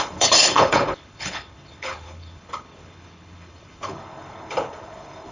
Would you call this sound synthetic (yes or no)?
yes